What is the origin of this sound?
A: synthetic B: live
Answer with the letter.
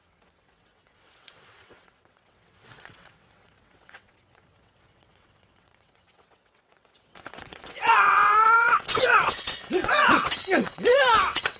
A